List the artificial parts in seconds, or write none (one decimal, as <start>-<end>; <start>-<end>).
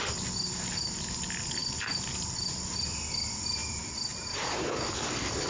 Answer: none